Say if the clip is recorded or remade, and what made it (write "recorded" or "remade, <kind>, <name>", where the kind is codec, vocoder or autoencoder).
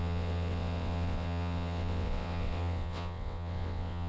remade, vocoder, WaveNeXt